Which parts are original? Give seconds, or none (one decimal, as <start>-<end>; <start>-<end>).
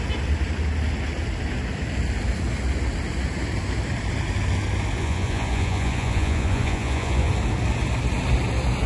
0.0-5.0; 7.3-8.9